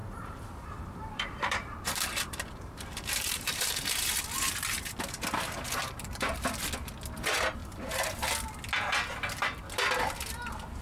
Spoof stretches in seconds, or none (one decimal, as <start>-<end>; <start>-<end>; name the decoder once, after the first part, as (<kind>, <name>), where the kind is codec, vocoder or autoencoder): 0.0-3.9 (vocoder, BigVGAN v2); 5.8-6.3; 7.6-8.1